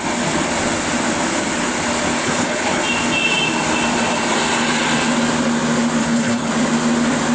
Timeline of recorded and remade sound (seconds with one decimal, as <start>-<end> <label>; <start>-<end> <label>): 0.0-2.2 recorded; 2.2-2.8 remade; 2.8-6.0 recorded; 6.0-6.5 remade; 6.5-7.3 recorded